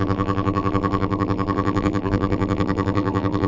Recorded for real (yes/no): no